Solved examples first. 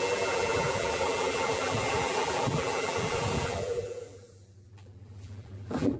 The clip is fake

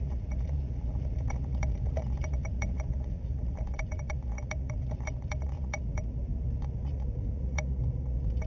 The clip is fake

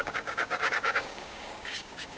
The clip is fake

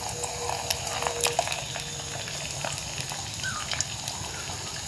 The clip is real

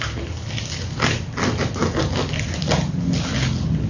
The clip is real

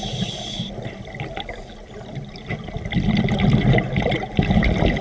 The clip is real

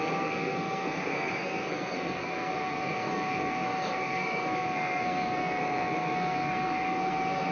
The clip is fake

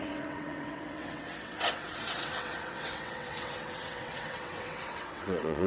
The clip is fake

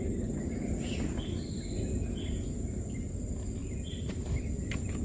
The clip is real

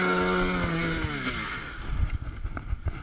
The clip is real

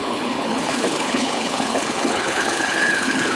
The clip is fake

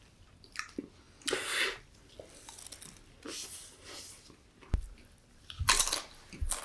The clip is real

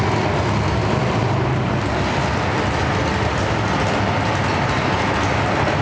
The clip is real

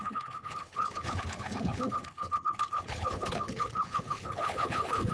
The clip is fake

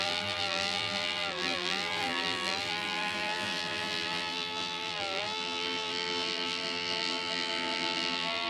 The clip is fake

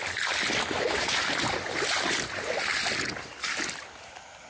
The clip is real